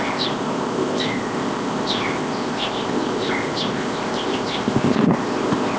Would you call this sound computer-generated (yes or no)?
yes